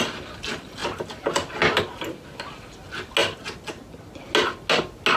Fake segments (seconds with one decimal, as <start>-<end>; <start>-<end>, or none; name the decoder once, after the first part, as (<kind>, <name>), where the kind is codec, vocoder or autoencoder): none